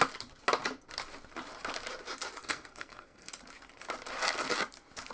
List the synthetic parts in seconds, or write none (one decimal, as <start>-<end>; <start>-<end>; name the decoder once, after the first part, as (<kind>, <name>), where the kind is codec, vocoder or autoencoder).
2.4-3.3 (codec, SNAC)